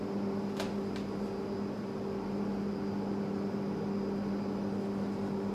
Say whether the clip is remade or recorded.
recorded